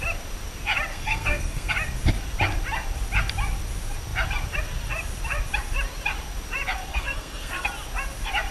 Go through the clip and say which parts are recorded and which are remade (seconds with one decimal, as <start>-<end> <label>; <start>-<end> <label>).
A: 0.0-0.9 recorded; 0.9-1.7 remade; 1.7-6.9 recorded; 6.9-7.7 remade; 7.7-8.5 recorded